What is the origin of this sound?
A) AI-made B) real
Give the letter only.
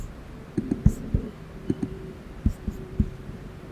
A